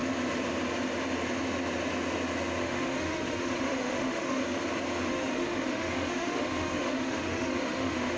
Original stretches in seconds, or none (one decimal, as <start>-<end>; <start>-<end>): 0.0-2.6; 4.4-5.1